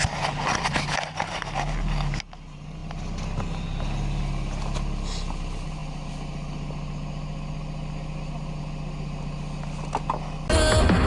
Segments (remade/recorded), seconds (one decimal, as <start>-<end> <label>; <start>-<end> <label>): 0.0-11.1 recorded